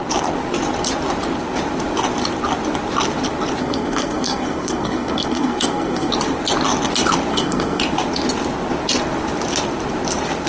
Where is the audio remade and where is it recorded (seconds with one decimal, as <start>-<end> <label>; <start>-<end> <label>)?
0.0-3.6 recorded; 3.6-6.1 remade; 6.1-7.3 recorded; 7.3-7.8 remade; 7.8-10.5 recorded

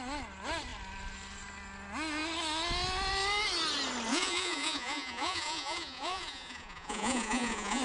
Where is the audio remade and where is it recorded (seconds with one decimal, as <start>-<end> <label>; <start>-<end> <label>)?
0.0-4.1 recorded; 4.1-7.8 remade

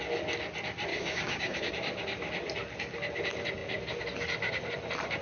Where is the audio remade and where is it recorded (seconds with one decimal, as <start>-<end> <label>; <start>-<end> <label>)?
0.0-0.9 recorded; 0.9-1.7 remade; 1.7-5.2 recorded